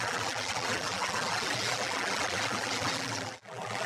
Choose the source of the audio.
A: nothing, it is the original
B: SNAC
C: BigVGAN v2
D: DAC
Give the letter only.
C